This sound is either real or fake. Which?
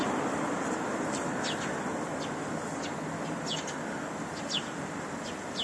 real